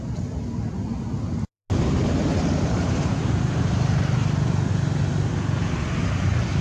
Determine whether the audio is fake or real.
real